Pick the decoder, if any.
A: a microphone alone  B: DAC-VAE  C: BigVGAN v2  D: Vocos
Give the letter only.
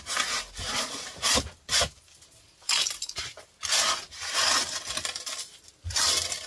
A